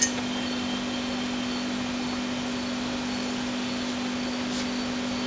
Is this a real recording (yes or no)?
yes